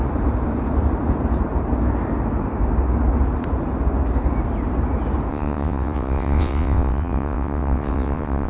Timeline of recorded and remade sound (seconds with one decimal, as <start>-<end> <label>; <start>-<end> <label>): 0.0-5.3 recorded; 5.3-8.5 remade